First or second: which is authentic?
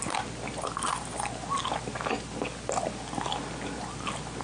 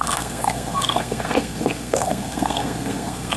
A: first